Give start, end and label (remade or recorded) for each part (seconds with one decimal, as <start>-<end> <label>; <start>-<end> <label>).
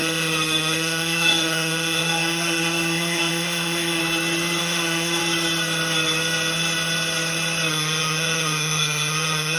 0.0-4.0 remade; 4.0-4.6 recorded; 4.6-5.2 remade; 5.2-7.7 recorded; 7.7-9.6 remade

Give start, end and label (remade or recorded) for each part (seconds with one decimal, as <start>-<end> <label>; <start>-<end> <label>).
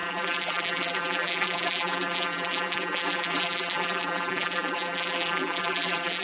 0.0-6.2 remade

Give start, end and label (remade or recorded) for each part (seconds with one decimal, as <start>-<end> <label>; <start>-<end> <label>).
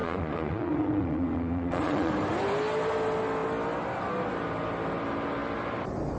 0.0-2.1 remade; 2.1-6.2 recorded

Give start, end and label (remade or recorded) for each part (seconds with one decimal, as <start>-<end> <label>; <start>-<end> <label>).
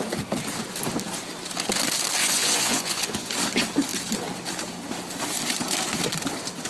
0.0-2.2 recorded; 2.2-3.3 remade; 3.3-6.7 recorded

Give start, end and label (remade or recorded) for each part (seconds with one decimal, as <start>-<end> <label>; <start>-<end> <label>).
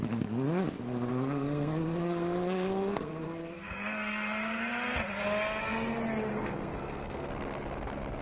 0.0-1.1 recorded; 1.1-4.6 remade; 4.6-6.3 recorded; 6.3-7.3 remade; 7.3-8.2 recorded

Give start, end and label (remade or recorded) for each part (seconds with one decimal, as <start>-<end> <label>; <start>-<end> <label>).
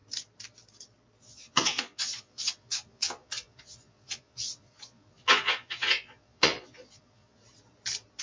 0.0-1.2 recorded; 1.2-7.4 remade; 7.4-8.2 recorded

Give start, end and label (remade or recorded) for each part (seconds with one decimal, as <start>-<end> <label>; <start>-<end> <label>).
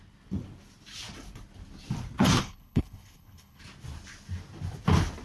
0.0-2.4 recorded; 2.4-3.6 remade; 3.6-5.2 recorded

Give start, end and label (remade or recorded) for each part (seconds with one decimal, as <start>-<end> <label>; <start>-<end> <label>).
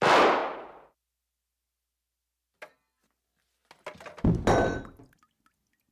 0.0-5.9 recorded